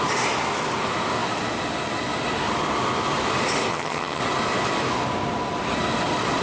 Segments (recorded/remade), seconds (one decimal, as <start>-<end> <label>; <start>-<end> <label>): 0.0-3.7 recorded; 3.7-4.2 remade; 4.2-6.4 recorded